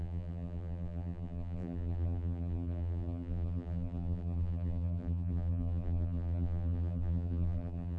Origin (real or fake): fake